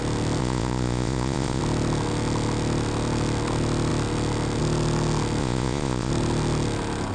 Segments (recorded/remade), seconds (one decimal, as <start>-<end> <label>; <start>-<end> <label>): 0.0-0.4 recorded; 0.4-1.6 remade; 1.6-5.4 recorded; 5.4-6.1 remade; 6.1-7.1 recorded